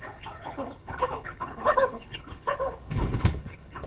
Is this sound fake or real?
fake